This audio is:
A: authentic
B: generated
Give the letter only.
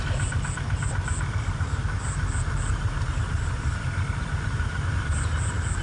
A